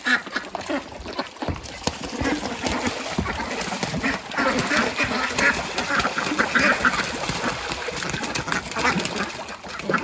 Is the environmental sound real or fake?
real